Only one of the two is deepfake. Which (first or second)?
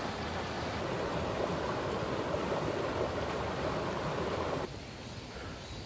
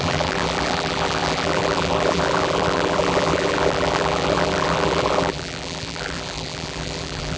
second